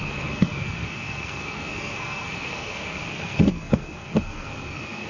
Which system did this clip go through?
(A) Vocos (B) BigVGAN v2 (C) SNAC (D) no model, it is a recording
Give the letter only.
C